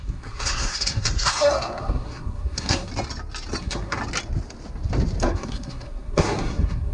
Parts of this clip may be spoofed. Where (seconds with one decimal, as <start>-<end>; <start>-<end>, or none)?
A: 0.0-2.9; 3.6-4.0; 5.2-6.9